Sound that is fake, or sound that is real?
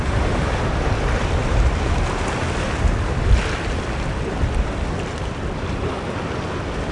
real